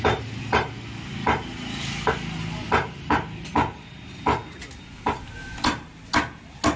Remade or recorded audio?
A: recorded